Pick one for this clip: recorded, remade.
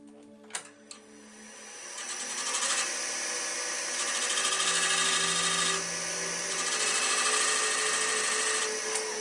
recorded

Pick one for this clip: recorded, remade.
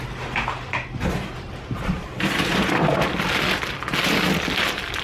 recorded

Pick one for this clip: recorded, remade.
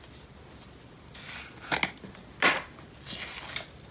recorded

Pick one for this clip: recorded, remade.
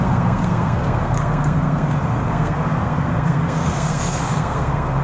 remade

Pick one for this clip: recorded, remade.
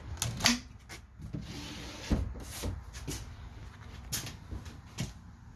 recorded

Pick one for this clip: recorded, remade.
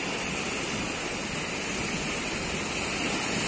recorded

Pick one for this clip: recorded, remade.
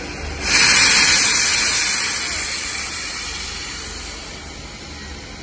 recorded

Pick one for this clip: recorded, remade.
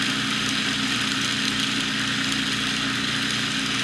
recorded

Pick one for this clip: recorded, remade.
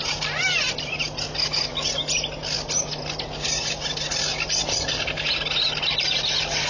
recorded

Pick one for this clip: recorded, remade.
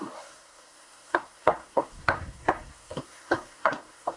remade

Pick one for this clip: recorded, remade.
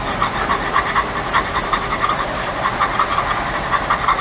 recorded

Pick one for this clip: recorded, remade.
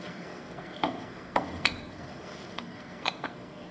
remade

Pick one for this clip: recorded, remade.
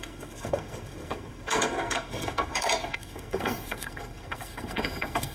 remade